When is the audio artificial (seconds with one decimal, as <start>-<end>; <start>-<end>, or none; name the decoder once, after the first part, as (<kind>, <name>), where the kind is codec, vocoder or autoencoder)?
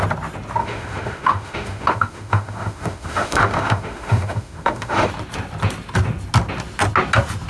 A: 0.6-5.1 (autoencoder, DAC-VAE)